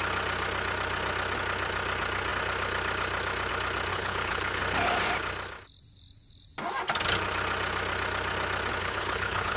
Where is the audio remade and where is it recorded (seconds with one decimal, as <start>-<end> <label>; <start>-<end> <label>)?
0.0-3.9 recorded; 3.9-4.6 remade; 4.6-8.8 recorded; 8.8-9.6 remade